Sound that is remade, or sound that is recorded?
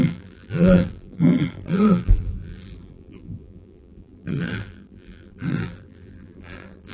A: remade